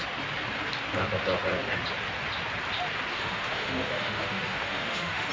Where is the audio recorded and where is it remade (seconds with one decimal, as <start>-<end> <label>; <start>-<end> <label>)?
0.0-3.1 recorded; 3.1-5.3 remade